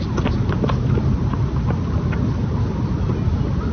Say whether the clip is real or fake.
real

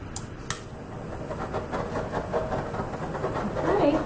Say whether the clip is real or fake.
real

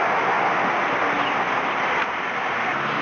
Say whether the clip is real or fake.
real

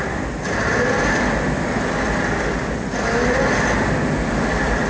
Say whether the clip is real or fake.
real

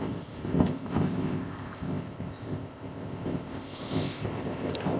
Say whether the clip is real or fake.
fake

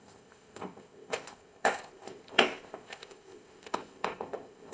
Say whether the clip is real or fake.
fake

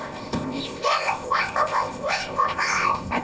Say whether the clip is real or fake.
fake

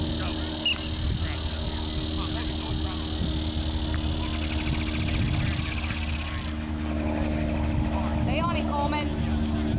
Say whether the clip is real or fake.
real